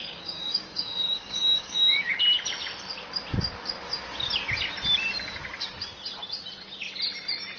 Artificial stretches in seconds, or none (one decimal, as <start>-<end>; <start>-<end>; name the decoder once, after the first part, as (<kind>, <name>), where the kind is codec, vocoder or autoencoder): 0.0-2.2 (codec, DAC)